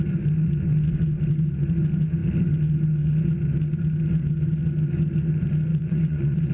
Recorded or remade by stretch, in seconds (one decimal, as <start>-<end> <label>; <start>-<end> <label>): 0.0-5.7 recorded; 5.7-6.5 remade